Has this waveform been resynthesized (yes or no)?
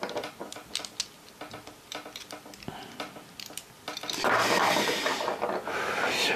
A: no